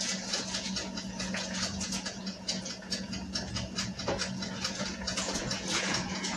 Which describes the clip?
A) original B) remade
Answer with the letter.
B